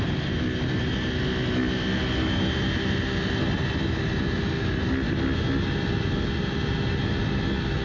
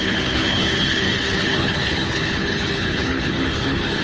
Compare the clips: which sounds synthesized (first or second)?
second